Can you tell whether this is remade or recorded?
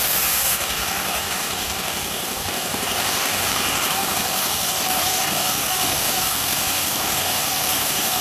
remade